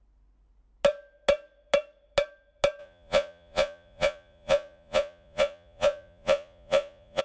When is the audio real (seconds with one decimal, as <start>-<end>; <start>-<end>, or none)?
0.0-2.8